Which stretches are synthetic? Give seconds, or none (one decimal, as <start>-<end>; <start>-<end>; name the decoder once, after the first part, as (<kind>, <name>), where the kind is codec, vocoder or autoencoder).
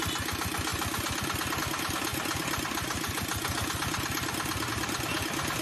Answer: none